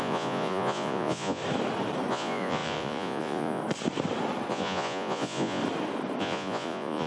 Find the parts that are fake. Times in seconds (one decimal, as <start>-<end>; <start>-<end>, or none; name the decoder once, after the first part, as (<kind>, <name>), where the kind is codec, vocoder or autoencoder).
0.0-1.4 (vocoder, Vocos); 2.1-3.6; 4.5-5.6; 6.2-7.1